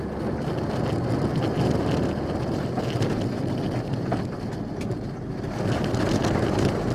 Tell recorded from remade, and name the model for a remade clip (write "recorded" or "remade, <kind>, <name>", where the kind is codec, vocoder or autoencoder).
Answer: recorded